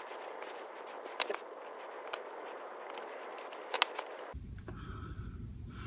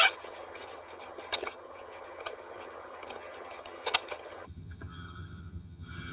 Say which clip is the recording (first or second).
first